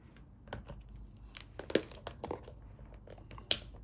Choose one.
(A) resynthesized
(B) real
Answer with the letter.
B